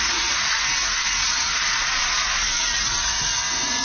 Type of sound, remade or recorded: remade